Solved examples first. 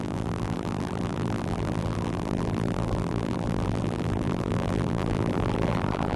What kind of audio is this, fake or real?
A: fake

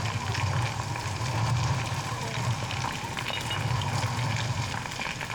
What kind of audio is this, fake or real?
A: real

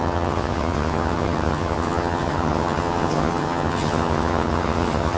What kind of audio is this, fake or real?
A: fake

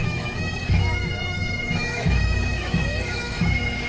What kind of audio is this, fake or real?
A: fake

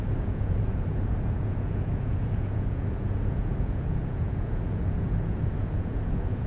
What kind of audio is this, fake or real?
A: fake